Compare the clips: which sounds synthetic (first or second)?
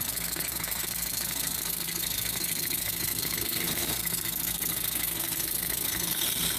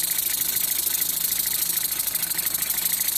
first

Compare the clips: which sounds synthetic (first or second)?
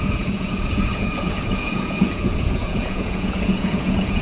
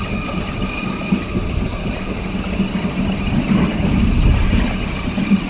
first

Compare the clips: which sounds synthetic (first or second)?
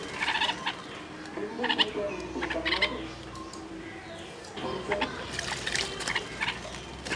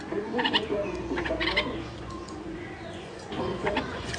second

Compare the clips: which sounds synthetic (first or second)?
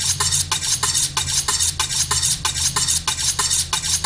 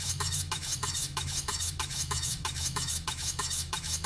second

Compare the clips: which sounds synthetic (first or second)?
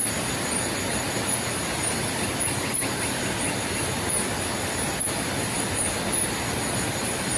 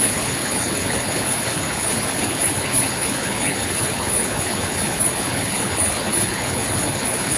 second